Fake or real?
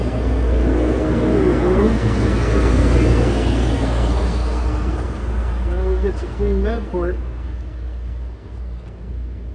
fake